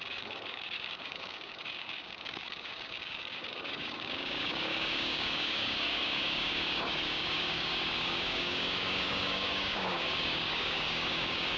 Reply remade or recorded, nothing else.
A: remade